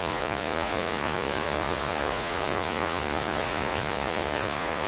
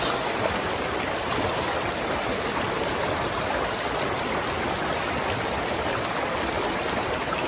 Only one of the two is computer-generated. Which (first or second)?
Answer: first